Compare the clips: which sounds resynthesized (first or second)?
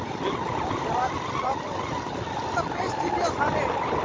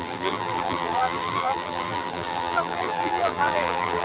second